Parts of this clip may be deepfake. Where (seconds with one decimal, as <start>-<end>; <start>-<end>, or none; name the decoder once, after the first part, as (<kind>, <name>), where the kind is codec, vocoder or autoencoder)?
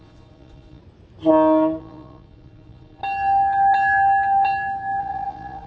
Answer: 0.0-0.8 (vocoder, Vocos); 1.8-3.0; 5.0-5.7